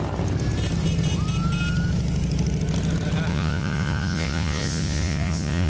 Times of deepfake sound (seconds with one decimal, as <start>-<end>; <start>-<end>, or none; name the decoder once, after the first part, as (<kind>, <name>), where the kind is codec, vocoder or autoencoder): 3.3-5.7 (vocoder, Vocos)